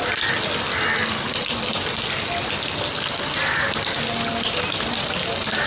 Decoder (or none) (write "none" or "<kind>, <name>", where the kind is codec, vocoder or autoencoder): none